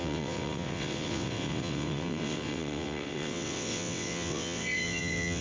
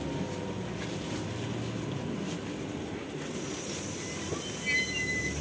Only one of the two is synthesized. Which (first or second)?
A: first